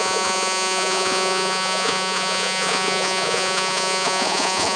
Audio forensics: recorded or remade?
remade